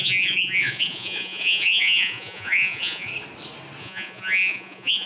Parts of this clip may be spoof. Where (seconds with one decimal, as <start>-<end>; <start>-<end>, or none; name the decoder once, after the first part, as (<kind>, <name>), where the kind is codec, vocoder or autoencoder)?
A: 0.0-3.1 (vocoder, Vocos); 3.8-5.1